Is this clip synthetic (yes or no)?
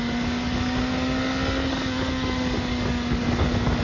yes